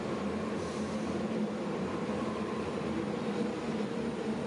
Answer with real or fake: fake